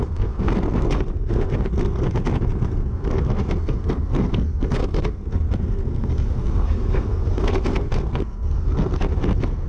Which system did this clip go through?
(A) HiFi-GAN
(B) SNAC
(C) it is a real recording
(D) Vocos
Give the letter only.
B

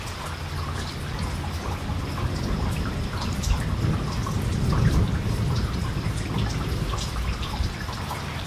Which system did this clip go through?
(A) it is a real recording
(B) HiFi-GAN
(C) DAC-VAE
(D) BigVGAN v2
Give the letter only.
A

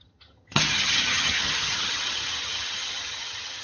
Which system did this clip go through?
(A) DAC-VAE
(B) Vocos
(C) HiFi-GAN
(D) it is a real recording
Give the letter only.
C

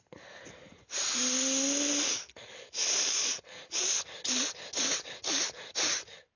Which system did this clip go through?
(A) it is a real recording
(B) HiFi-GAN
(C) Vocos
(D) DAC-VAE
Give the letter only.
A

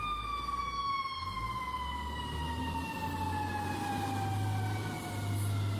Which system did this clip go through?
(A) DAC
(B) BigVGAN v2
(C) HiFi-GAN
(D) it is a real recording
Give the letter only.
D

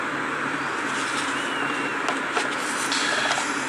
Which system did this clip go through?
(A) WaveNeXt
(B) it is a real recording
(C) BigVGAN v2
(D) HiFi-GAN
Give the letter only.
B